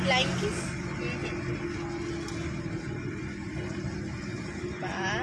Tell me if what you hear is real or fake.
real